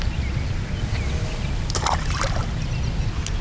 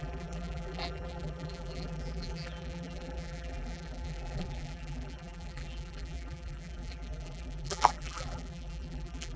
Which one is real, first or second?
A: first